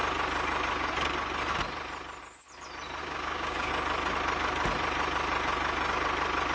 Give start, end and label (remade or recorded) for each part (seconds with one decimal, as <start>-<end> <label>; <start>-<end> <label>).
0.0-3.0 recorded; 3.0-3.7 remade; 3.7-6.5 recorded